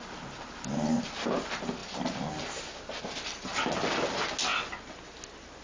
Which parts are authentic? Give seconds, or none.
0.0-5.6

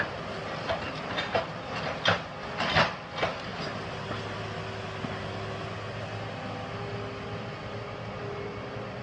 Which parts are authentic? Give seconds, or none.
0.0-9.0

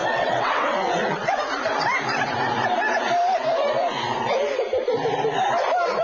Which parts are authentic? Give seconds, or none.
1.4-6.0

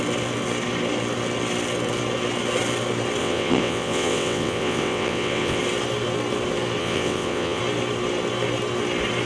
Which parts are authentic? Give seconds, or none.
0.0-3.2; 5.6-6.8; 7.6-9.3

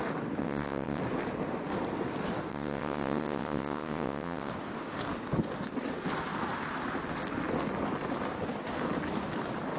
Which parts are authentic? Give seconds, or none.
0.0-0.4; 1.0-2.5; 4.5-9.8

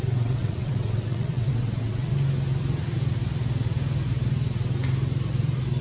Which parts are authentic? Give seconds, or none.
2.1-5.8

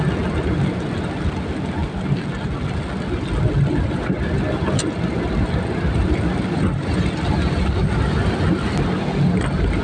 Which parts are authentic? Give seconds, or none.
0.0-9.8